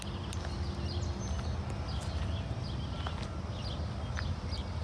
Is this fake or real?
real